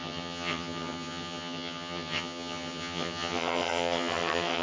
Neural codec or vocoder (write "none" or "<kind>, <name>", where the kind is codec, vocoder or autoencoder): vocoder, HiFi-GAN